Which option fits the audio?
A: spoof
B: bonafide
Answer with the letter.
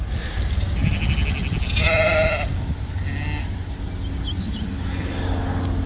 B